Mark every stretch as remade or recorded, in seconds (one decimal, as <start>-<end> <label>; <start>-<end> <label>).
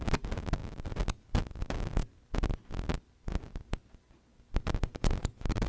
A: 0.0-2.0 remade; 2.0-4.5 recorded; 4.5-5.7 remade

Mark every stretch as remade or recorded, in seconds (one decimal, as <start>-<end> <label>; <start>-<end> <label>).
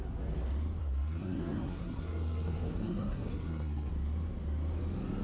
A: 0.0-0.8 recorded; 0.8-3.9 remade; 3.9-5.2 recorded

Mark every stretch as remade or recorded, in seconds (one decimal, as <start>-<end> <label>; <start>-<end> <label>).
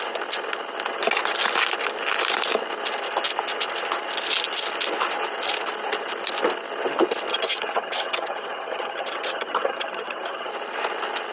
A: 0.0-7.3 recorded; 7.3-10.5 remade; 10.5-11.3 recorded